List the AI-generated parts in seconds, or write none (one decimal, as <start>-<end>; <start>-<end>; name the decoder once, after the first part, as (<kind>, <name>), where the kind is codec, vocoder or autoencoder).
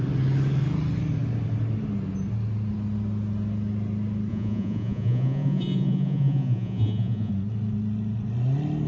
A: 4.3-7.3 (vocoder, Vocos)